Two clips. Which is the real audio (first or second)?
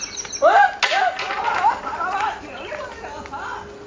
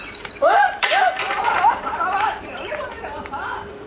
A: first